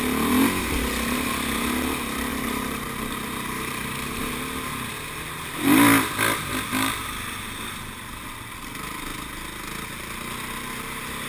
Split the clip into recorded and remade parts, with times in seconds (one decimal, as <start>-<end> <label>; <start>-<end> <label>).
0.0-2.3 recorded; 2.3-4.3 remade; 4.3-11.3 recorded